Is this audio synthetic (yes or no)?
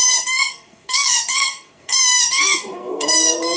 yes